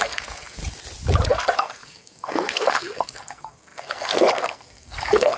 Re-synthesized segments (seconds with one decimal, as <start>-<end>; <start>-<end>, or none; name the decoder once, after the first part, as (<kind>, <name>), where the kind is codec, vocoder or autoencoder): 0.0-0.6 (codec, SNAC); 1.3-5.4

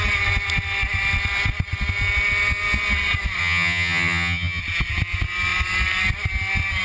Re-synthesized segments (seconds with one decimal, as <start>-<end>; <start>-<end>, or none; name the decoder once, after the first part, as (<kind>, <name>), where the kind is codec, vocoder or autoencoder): 3.4-4.6 (vocoder, HiFi-GAN)

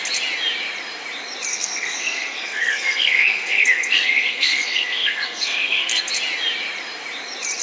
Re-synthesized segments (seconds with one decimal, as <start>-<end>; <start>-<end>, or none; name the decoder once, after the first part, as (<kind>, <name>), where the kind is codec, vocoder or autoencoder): 1.5-6.1 (codec, SNAC)

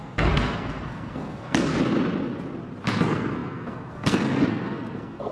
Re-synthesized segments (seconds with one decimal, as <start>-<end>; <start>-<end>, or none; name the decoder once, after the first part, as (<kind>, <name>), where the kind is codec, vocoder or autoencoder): 0.0-1.7 (codec, SNAC); 2.9-5.3

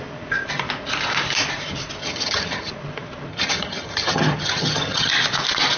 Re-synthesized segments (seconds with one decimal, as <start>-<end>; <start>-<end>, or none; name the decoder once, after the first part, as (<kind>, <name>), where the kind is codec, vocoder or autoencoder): 2.0-2.7 (vocoder, HiFi-GAN); 3.3-5.1